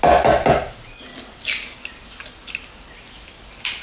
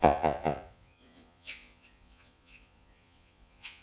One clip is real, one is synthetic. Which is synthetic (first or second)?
second